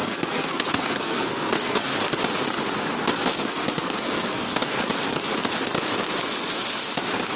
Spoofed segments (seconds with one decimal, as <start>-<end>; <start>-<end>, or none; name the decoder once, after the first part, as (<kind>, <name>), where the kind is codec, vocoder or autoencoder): 0.0-1.9 (codec, SNAC); 3.3-4.9